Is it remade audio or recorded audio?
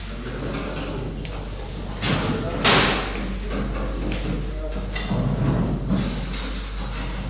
recorded